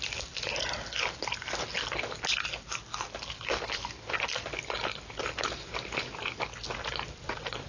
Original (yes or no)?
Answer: yes